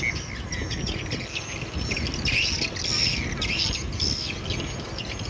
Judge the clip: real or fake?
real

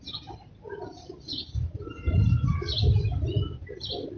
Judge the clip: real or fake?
real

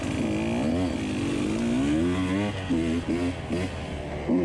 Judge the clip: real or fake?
real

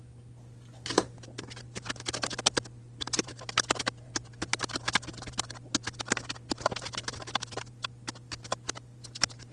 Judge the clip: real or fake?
real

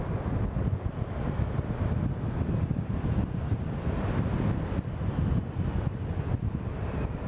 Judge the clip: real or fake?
real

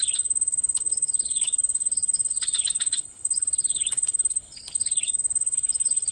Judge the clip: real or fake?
fake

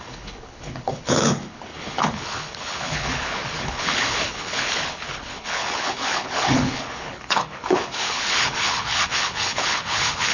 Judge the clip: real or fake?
fake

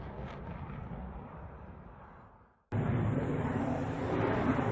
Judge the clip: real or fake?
real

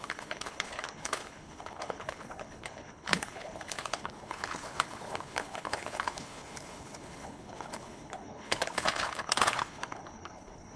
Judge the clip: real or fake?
fake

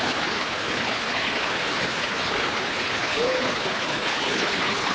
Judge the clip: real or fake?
fake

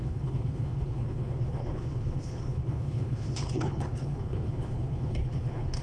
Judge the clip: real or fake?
fake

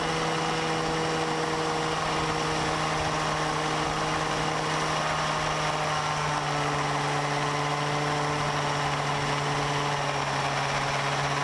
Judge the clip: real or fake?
real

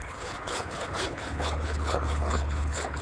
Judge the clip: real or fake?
fake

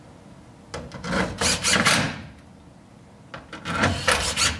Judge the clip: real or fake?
real